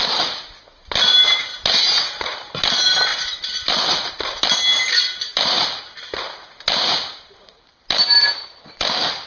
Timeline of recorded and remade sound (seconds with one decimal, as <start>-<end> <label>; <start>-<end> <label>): 0.0-3.1 recorded; 3.1-4.4 remade; 4.4-9.3 recorded